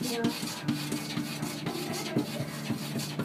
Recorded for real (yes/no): yes